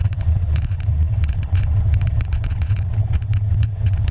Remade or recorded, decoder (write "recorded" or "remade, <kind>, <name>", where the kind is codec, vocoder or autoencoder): remade, vocoder, WaveNeXt